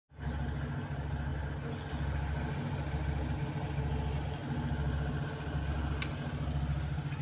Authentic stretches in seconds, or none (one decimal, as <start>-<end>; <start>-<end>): 0.0-7.2